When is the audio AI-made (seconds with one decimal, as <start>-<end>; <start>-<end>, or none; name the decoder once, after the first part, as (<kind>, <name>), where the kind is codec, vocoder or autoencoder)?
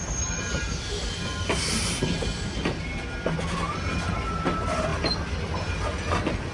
none